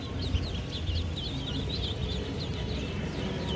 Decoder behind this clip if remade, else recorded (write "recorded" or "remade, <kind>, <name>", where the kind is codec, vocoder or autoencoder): recorded